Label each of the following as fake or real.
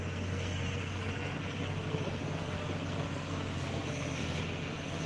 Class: fake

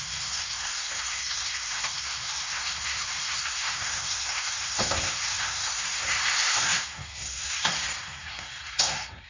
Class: fake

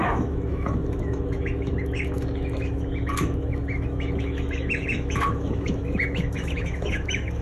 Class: fake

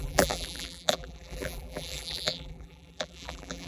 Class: fake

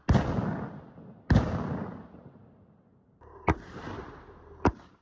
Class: real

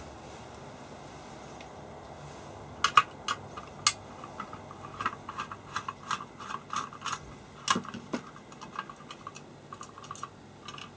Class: real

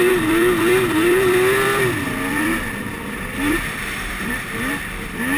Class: fake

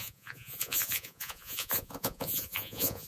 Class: fake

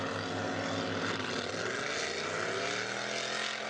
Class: real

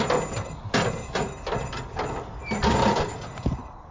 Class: real